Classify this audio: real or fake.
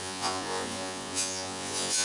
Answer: fake